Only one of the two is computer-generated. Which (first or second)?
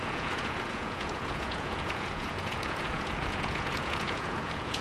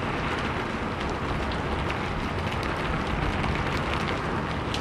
first